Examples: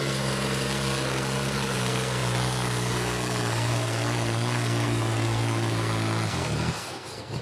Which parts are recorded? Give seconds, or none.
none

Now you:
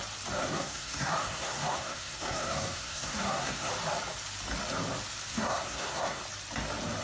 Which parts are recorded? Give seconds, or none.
0.0-0.4; 3.7-5.3; 6.2-7.0

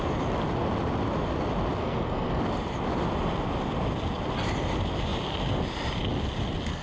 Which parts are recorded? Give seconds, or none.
0.0-1.8; 2.4-6.8

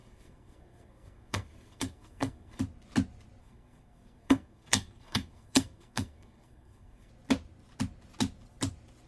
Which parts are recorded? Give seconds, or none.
2.6-3.4; 7.1-9.1

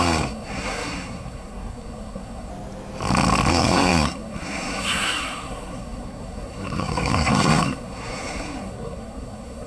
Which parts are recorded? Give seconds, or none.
2.5-3.5

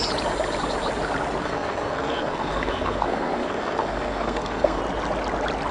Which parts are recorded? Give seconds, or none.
0.0-1.4; 4.8-5.7

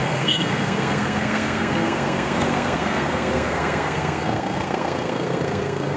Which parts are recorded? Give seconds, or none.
none